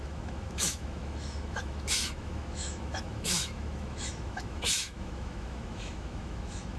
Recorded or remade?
remade